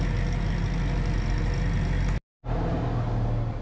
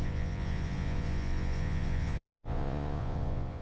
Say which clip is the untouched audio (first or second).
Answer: first